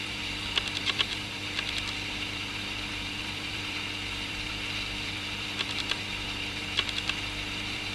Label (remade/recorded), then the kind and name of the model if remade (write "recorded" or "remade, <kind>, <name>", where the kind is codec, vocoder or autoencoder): remade, vocoder, BigVGAN v2